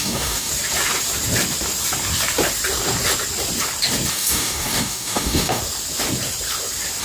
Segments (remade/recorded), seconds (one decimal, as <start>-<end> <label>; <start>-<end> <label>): 0.0-0.5 remade; 0.5-4.1 recorded; 4.1-5.6 remade; 5.6-7.0 recorded